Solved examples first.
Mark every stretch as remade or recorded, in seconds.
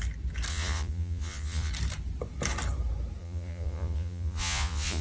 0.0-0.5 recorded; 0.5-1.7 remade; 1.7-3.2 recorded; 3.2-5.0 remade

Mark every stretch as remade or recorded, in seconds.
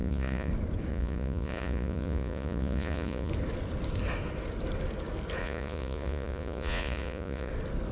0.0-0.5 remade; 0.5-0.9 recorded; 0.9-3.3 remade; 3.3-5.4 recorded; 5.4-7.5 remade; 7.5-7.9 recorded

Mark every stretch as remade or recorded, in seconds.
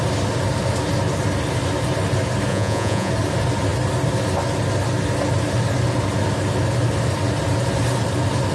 0.0-2.5 recorded; 2.5-3.1 remade; 3.1-8.5 recorded